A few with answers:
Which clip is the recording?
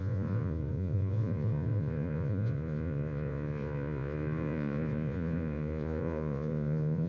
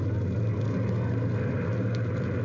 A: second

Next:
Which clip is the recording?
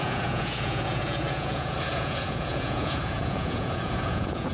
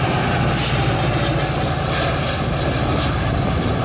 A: second